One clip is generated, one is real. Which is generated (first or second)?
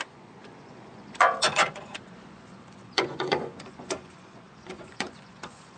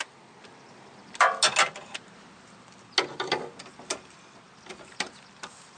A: first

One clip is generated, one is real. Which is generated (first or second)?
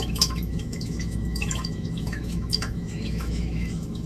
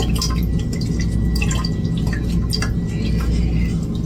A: first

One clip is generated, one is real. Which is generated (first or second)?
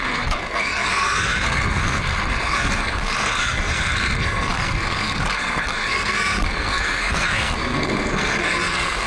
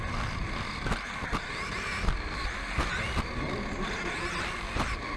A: first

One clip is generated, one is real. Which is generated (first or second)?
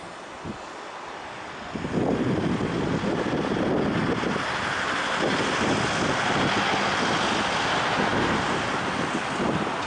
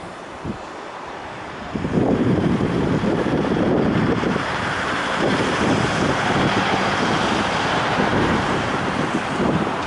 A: second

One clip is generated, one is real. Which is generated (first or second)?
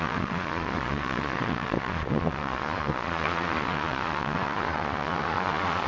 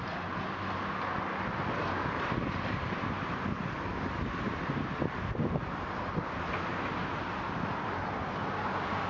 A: first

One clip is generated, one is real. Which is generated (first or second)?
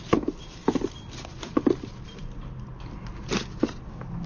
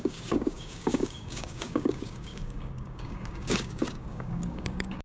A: second